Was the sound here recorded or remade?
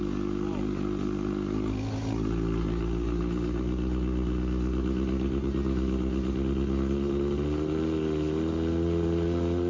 recorded